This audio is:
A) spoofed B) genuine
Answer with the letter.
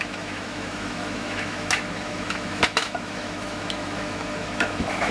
A